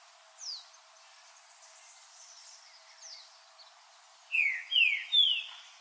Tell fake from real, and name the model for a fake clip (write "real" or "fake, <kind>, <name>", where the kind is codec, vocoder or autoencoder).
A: real